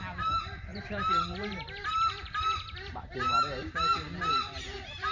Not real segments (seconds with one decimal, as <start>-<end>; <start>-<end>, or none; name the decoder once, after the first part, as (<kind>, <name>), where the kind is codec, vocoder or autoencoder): 0.7-3.8 (vocoder, BigVGAN v2)